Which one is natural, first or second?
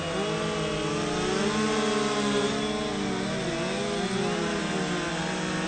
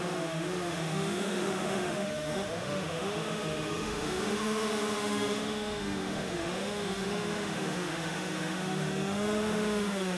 first